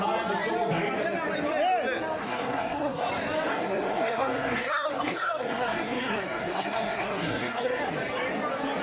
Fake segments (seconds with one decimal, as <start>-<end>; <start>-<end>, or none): 2.2-3.1; 3.5-7.8